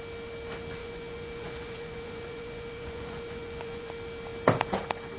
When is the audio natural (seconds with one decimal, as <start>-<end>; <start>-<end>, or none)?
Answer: 0.0-0.8; 3.9-5.2

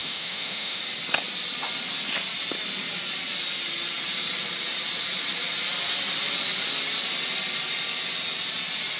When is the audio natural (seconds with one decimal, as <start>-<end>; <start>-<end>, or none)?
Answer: 0.8-9.0

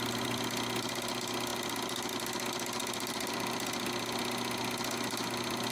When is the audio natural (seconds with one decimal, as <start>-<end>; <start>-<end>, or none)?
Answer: 0.0-5.7